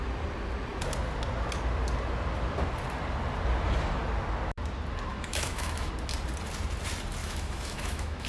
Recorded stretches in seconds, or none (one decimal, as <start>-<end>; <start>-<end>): 0.0-5.1; 5.9-7.2